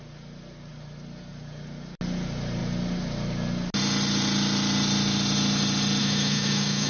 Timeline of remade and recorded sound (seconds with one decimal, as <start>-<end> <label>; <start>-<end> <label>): 0.0-6.0 recorded; 6.0-6.9 remade